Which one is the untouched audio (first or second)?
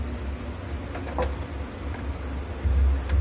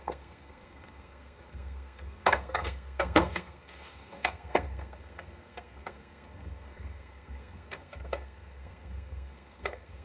first